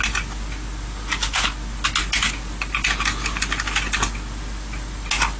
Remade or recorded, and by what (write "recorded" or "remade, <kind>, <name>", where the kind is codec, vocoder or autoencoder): recorded